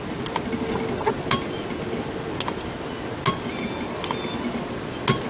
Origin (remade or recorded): recorded